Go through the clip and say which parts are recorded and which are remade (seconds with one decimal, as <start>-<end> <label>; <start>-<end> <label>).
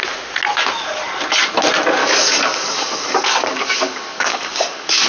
0.0-2.0 recorded; 2.0-5.1 remade